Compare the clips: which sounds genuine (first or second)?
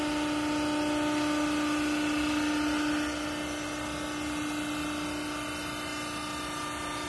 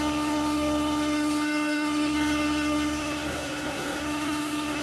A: first